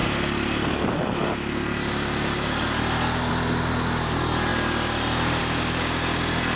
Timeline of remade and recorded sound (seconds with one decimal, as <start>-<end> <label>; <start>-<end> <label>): 0.0-6.6 recorded